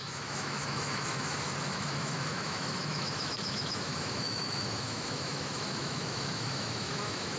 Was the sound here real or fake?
fake